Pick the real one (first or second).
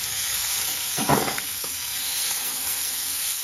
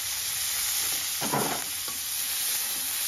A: second